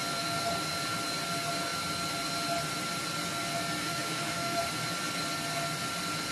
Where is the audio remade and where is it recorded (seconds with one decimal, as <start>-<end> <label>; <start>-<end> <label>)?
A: 0.0-3.8 recorded; 3.8-4.6 remade; 4.6-6.3 recorded